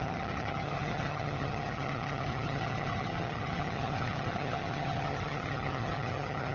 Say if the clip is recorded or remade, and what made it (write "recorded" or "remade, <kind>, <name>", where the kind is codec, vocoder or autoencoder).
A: remade, vocoder, HiFi-GAN